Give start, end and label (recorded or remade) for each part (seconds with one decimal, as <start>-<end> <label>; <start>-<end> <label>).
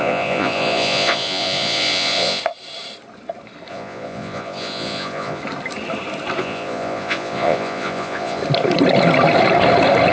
0.0-2.4 remade; 2.4-3.7 recorded; 3.7-5.4 remade; 5.4-6.4 recorded; 6.4-8.4 remade; 8.4-10.1 recorded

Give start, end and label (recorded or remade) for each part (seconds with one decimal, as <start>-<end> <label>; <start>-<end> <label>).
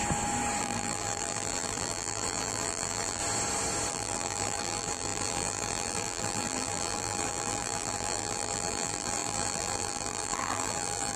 0.0-0.6 recorded; 0.6-3.2 remade; 3.2-3.9 recorded; 3.9-11.2 remade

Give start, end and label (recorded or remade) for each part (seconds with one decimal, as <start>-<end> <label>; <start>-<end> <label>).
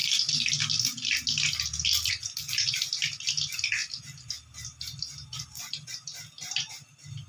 0.0-7.3 recorded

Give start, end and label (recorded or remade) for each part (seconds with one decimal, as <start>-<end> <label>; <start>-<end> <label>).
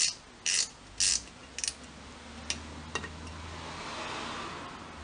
0.0-5.0 recorded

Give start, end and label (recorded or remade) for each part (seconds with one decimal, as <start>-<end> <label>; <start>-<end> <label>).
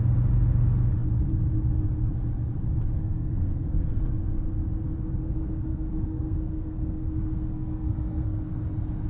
0.0-3.0 recorded; 3.0-4.1 remade; 4.1-5.2 recorded; 5.2-8.4 remade; 8.4-9.1 recorded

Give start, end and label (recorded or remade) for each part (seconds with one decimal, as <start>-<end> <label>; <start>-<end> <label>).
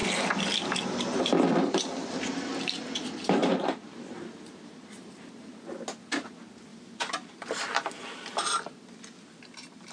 0.0-3.4 recorded; 3.4-5.3 remade; 5.3-6.7 recorded; 6.7-7.8 remade; 7.8-9.9 recorded